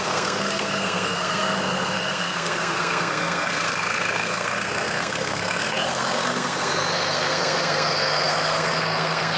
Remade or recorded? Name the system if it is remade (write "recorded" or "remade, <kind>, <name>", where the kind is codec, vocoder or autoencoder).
remade, codec, SNAC